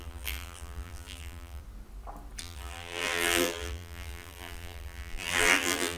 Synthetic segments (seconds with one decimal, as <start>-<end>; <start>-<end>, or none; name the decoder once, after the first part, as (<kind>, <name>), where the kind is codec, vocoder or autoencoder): 0.0-1.6 (vocoder, BigVGAN v2); 2.4-6.0